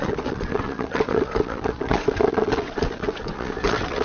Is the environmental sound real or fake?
fake